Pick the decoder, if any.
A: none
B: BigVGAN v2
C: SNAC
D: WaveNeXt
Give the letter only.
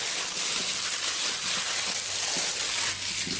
A